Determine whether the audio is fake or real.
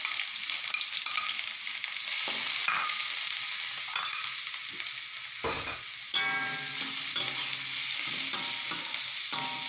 real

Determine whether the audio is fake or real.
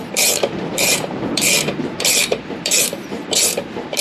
fake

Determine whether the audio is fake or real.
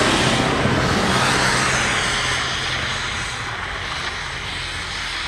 real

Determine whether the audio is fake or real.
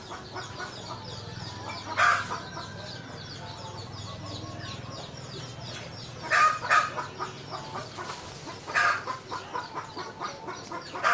real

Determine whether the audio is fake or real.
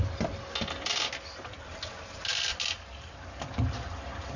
real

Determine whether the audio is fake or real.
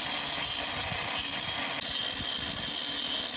real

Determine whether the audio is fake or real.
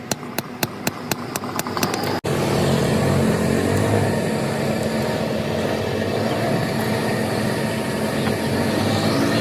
real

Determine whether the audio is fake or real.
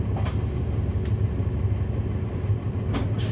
real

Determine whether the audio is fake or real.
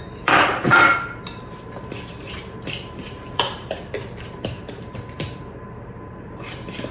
fake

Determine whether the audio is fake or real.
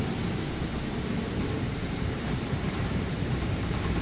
fake